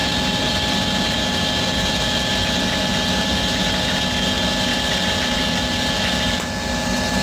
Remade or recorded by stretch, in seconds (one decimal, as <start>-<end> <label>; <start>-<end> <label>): 0.0-7.2 recorded